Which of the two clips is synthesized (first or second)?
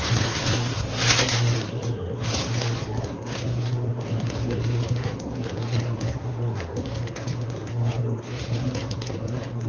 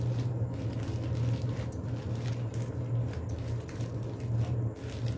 first